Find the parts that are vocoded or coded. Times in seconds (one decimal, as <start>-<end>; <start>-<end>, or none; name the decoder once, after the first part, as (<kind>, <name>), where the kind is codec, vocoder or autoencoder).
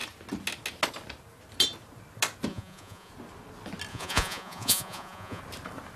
2.5-3.1 (vocoder, Vocos); 3.9-5.4